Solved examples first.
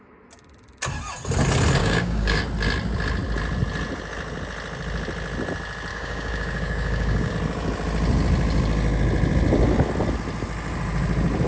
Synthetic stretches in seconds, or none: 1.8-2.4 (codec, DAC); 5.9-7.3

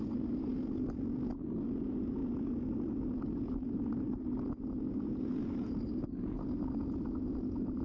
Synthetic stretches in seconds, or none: none

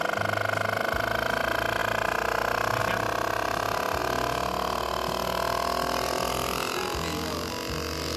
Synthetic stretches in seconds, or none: none

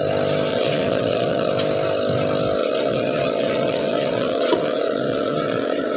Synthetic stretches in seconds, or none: 0.5-1.5 (vocoder, Vocos); 2.6-6.0

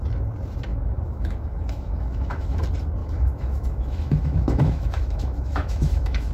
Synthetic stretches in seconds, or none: 0.7-2.6 (autoencoder, DAC-VAE); 3.0-6.3

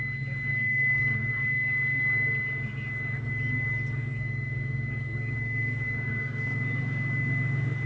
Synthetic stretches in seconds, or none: 0.5-1.3 (codec, DAC); 4.0-6.8

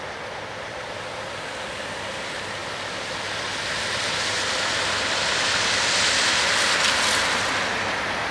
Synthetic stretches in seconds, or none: none

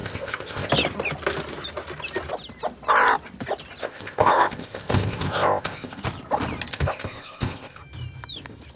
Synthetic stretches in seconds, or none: 0.0-0.7 (codec, ZipCodec); 3.8-6.0; 6.7-7.8